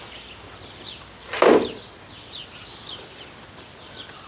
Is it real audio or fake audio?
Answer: real